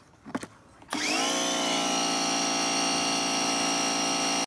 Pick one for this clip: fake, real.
real